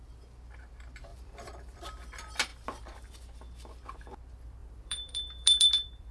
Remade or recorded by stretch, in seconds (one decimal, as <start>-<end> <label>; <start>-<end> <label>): 0.0-1.1 recorded; 1.1-1.8 remade; 1.8-4.6 recorded; 4.6-6.1 remade